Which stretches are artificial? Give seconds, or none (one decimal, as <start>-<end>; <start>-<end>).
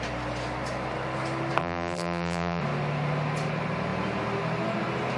1.6-2.6